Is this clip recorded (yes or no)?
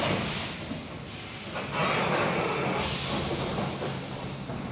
yes